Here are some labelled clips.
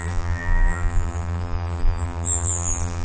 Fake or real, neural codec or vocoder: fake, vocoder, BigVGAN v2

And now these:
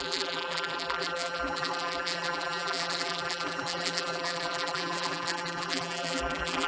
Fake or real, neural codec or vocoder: fake, vocoder, BigVGAN v2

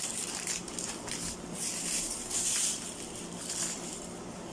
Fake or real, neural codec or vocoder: fake, vocoder, BigVGAN v2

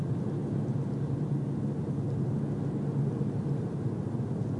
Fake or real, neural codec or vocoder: real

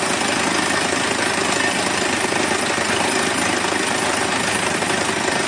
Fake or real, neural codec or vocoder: real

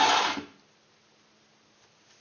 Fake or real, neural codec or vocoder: real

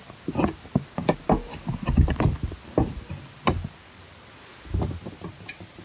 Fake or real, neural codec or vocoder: real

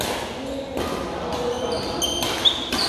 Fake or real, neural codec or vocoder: real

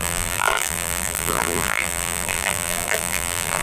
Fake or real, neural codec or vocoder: fake, vocoder, BigVGAN v2